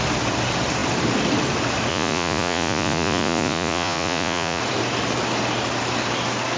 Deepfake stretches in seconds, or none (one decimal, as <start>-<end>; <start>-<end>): 1.9-4.6